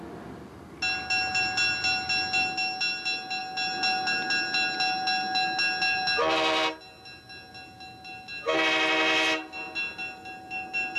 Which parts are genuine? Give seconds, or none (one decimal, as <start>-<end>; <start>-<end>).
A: 0.0-11.0